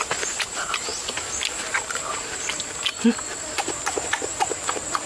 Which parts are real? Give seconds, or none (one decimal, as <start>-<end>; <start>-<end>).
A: 0.0-5.1